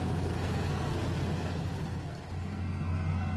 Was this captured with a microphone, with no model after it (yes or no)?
no